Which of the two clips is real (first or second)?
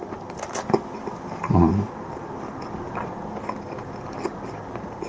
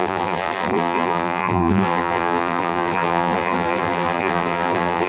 first